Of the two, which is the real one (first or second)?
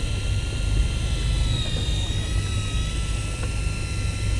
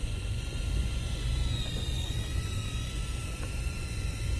first